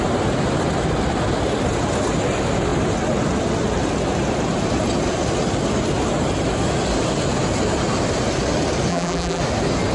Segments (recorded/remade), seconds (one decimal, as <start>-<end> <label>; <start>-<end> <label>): 0.0-8.9 recorded; 8.9-9.4 remade; 9.4-9.9 recorded